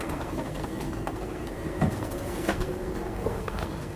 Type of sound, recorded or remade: remade